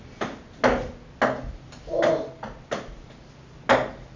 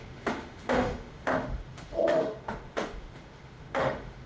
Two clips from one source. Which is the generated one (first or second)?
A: second